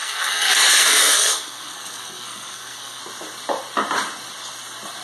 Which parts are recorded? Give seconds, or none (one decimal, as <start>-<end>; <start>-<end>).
3.0-5.0